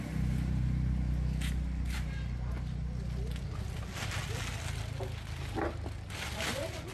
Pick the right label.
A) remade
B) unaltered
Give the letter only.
B